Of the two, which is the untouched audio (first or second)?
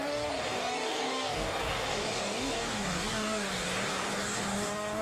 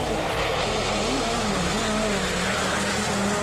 second